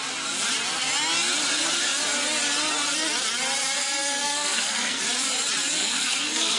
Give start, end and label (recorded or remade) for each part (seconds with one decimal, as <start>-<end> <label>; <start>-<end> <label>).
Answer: 0.0-4.2 recorded; 4.2-5.0 remade; 5.0-5.8 recorded; 5.8-6.6 remade